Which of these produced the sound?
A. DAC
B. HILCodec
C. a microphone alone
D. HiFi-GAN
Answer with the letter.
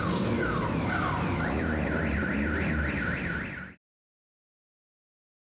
C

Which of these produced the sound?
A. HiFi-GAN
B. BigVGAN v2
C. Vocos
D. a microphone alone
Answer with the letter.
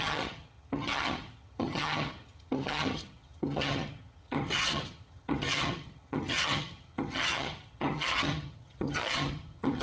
A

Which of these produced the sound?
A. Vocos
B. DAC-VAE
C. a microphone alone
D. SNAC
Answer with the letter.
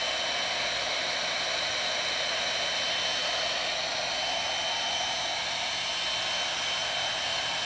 C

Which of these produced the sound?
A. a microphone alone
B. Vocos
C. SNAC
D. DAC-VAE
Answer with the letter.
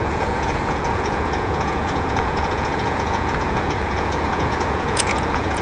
B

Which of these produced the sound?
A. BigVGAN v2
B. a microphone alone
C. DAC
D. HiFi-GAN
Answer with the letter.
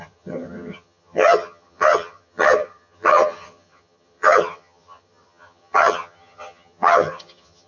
D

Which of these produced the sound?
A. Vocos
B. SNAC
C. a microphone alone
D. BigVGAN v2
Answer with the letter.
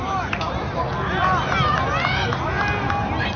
C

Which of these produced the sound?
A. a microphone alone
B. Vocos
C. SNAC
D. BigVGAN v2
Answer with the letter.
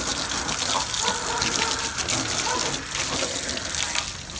A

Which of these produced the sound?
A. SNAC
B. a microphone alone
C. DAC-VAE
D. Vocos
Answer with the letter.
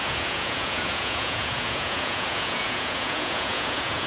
D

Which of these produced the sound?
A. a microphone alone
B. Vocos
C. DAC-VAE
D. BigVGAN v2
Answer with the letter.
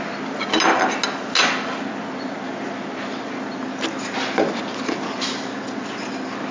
A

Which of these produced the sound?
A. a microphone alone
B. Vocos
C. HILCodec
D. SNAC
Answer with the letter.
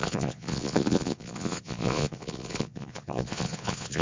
B